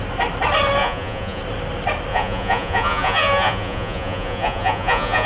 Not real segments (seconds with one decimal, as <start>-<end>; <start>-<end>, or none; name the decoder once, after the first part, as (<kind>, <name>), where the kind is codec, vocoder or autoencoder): 0.8-1.4 (vocoder, Vocos); 2.1-5.3